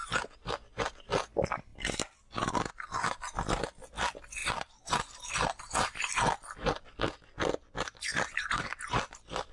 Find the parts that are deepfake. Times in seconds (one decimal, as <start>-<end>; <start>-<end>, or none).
none